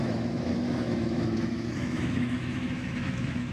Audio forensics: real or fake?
fake